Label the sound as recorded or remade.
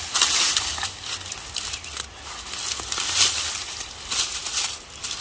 recorded